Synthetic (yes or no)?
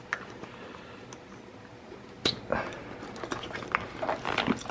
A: no